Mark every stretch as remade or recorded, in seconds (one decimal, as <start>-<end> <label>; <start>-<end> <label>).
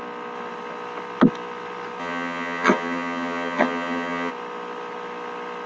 0.0-2.0 recorded; 2.0-4.3 remade; 4.3-5.7 recorded